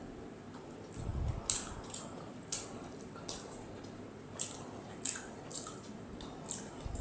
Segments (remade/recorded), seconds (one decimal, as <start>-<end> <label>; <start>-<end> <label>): 0.0-7.0 recorded